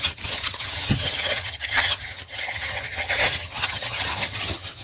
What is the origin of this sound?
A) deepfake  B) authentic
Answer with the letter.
A